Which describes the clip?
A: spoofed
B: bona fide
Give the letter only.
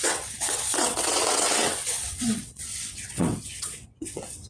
A